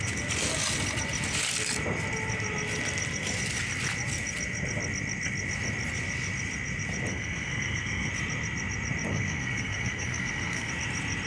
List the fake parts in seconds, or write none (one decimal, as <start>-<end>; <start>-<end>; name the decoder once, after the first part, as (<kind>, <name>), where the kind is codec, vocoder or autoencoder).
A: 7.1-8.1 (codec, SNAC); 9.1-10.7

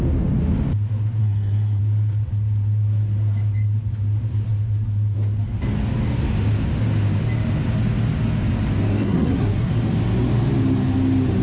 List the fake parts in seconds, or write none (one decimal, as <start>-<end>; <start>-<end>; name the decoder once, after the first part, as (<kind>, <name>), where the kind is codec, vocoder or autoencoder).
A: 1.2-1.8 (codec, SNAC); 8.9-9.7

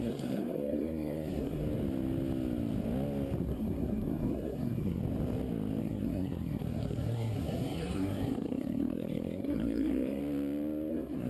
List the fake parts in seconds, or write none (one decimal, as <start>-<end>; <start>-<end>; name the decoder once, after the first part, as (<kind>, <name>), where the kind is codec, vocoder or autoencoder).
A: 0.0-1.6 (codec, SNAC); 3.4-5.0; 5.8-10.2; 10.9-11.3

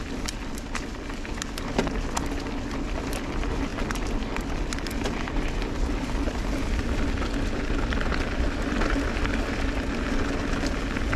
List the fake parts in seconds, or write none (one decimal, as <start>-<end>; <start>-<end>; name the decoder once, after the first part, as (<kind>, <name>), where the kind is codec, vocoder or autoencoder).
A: none